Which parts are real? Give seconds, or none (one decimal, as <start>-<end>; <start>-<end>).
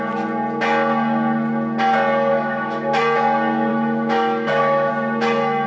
0.0-2.3; 3.0-3.7; 4.9-5.7